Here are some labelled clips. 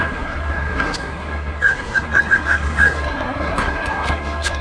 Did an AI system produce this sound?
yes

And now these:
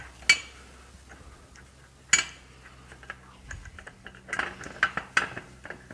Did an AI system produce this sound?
no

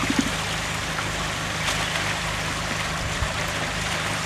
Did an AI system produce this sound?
no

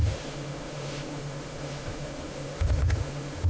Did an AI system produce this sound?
yes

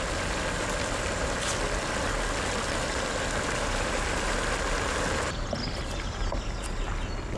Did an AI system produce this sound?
no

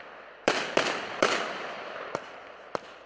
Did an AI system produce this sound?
yes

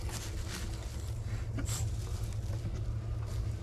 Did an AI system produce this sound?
no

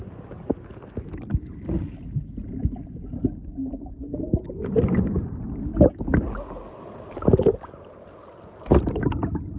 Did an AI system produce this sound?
no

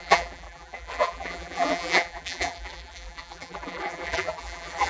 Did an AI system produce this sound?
yes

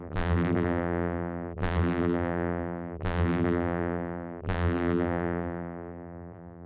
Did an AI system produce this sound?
yes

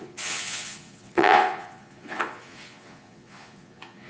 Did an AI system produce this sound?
yes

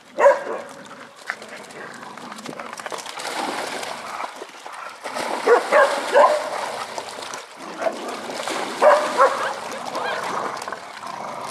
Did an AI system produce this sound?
no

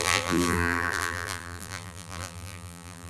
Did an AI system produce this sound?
yes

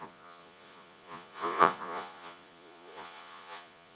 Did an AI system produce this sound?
yes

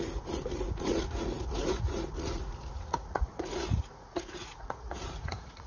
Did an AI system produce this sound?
yes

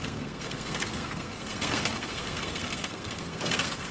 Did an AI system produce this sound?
yes